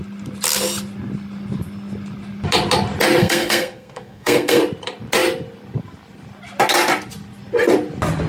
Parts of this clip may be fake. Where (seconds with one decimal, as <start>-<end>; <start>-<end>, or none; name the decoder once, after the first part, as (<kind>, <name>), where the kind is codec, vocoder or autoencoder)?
3.2-4.6 (codec, SNAC)